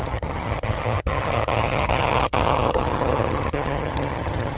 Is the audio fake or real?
fake